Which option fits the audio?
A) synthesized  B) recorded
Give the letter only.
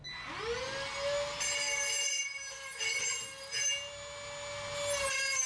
B